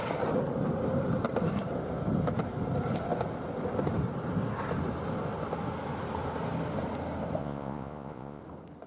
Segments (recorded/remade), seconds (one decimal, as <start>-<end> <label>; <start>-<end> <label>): 0.0-7.4 recorded; 7.4-8.4 remade; 8.4-8.9 recorded